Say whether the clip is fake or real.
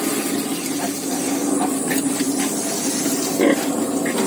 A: real